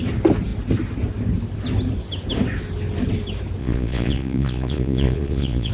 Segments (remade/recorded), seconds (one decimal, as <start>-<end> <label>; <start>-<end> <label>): 0.0-3.6 recorded; 3.6-5.7 remade